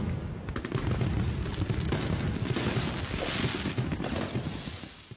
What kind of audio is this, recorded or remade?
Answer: recorded